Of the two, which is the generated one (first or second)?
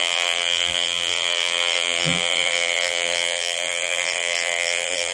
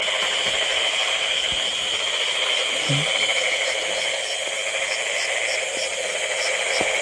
first